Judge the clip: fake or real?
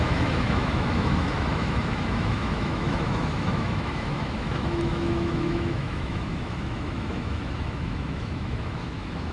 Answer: fake